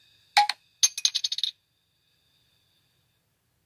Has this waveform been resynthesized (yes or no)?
no